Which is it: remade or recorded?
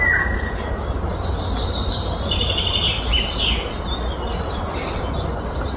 recorded